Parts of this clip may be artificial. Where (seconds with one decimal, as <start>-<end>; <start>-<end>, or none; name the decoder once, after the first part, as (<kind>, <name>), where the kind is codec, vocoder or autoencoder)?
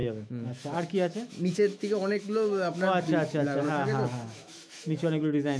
0.0-5.6 (autoencoder, DAC-VAE)